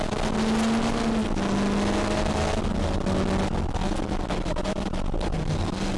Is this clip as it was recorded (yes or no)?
yes